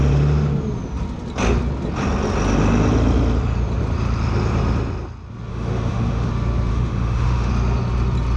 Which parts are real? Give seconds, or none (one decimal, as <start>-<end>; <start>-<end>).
0.0-5.5; 6.3-6.7; 7.5-8.4